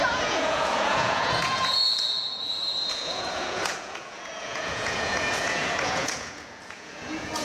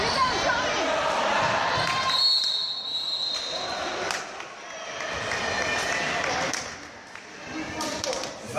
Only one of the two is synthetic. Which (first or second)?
first